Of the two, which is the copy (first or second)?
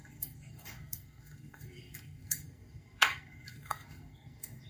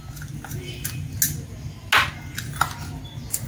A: first